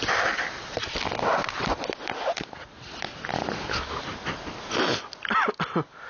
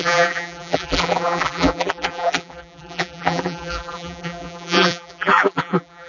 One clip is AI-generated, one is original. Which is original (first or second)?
first